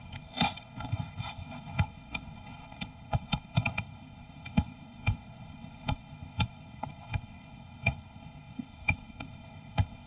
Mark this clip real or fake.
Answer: fake